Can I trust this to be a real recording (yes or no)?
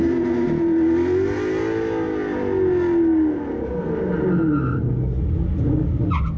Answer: yes